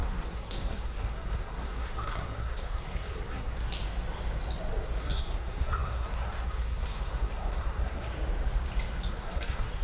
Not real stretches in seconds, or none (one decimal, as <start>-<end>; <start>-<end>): 0.0-3.5; 5.0-8.1; 9.1-9.8